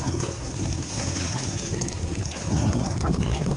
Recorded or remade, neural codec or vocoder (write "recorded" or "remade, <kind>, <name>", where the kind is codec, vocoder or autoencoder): remade, codec, SNAC